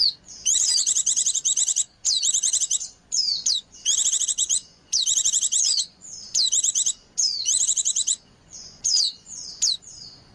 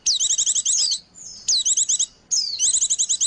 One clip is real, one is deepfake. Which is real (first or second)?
second